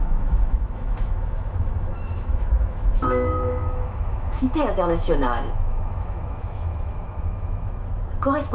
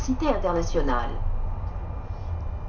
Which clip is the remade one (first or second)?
first